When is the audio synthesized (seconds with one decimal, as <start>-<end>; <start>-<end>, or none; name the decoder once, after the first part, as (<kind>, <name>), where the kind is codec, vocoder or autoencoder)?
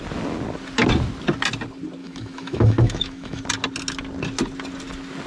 2.0-3.4 (autoencoder, DAC-VAE)